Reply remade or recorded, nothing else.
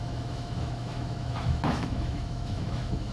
remade